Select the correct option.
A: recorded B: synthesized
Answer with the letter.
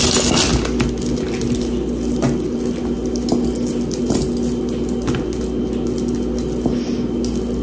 A